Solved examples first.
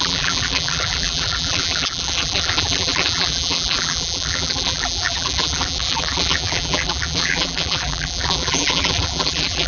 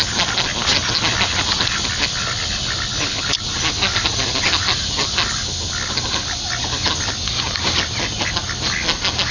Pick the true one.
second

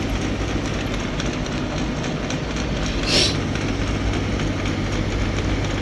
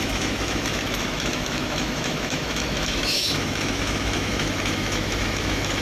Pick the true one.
first